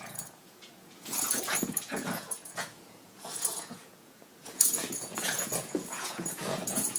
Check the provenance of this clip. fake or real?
fake